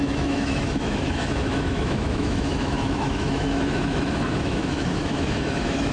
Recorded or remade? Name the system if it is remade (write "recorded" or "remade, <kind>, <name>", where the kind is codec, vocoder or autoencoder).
remade, autoencoder, DAC-VAE